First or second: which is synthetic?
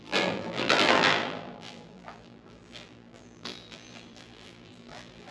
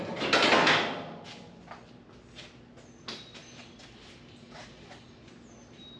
first